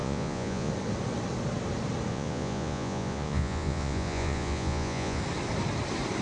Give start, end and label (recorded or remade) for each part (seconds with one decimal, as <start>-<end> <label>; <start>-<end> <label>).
0.0-0.7 remade; 0.7-2.1 recorded; 2.1-5.2 remade; 5.2-6.2 recorded